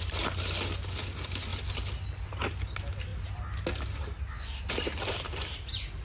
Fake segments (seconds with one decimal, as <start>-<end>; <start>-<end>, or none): none